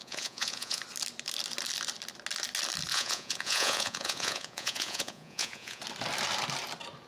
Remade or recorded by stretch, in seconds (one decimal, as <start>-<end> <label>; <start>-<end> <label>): 0.0-0.8 remade; 0.8-2.9 recorded; 2.9-5.8 remade; 5.8-7.1 recorded